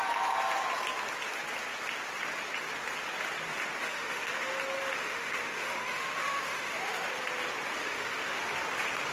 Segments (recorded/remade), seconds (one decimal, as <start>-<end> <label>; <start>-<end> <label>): 0.0-3.8 recorded; 3.8-4.5 remade; 4.5-5.0 recorded; 5.0-7.1 remade; 7.1-7.8 recorded; 7.8-8.4 remade; 8.4-9.1 recorded